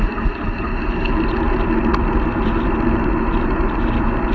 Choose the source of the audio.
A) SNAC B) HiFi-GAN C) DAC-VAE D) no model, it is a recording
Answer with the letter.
D